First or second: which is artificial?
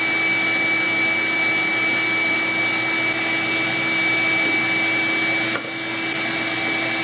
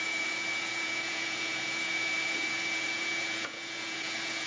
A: second